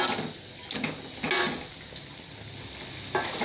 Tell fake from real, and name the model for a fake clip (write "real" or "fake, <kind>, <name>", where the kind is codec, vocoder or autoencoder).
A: real